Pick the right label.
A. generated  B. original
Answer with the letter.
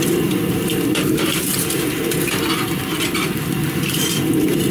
A